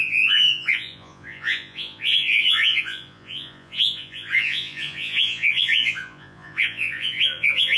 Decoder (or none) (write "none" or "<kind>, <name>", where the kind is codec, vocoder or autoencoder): vocoder, Vocos